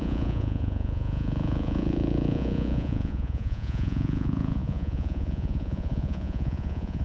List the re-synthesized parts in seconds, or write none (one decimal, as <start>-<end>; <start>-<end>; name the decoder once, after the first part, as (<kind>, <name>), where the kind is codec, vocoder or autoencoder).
0.0-7.0 (vocoder, Vocos)